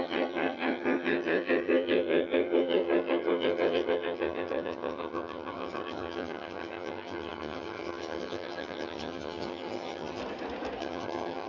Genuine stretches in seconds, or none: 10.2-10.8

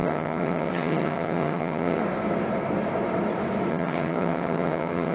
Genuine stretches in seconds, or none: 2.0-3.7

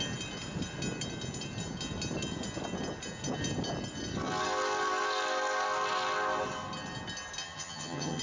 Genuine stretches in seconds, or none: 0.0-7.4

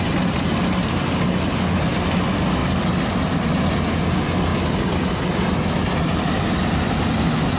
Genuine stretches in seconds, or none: 0.0-7.6